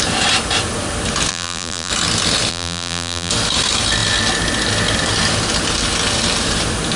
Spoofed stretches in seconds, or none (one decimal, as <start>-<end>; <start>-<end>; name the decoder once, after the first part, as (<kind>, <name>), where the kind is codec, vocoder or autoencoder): 1.3-1.9 (vocoder, BigVGAN v2); 2.5-3.3